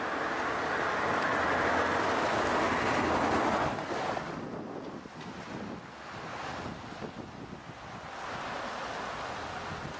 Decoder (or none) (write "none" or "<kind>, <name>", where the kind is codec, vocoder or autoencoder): none